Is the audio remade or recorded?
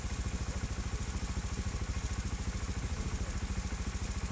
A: recorded